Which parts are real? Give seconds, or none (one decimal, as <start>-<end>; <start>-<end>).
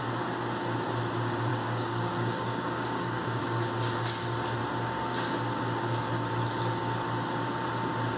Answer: 0.0-1.5; 3.4-8.2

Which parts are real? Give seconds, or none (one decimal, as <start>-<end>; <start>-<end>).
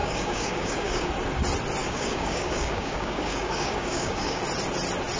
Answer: 1.1-1.8; 4.4-5.2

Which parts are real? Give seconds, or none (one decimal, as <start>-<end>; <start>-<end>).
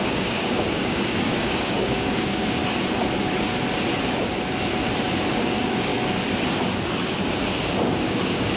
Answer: 2.6-5.3; 5.9-7.8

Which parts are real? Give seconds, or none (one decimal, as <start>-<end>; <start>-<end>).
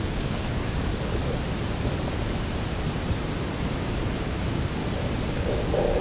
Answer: 1.2-3.7; 4.8-5.3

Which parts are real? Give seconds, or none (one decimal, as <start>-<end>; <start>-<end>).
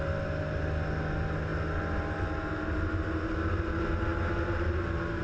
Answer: 0.0-5.2